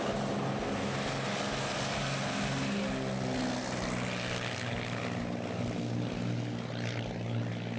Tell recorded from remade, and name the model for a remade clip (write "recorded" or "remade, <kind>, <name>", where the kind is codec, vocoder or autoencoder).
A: recorded